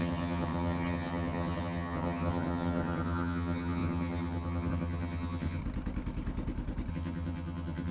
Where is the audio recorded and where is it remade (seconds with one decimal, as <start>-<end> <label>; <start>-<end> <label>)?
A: 0.0-5.6 remade; 5.6-6.9 recorded; 6.9-7.9 remade